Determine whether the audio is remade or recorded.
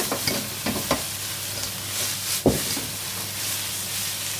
recorded